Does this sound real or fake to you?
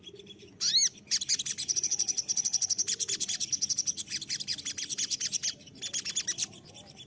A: real